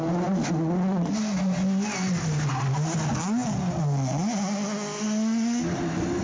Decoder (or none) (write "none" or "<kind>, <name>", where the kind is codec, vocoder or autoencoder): none